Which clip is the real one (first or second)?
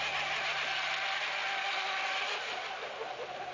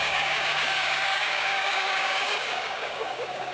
first